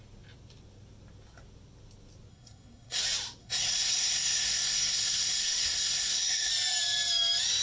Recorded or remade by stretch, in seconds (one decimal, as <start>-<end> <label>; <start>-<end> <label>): 0.0-2.3 recorded; 2.3-3.0 remade; 3.0-3.4 recorded; 3.4-6.5 remade; 6.5-7.6 recorded